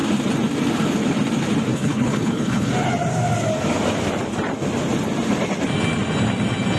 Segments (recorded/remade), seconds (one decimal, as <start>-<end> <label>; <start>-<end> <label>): 0.0-1.7 recorded; 1.7-2.7 remade; 2.7-6.8 recorded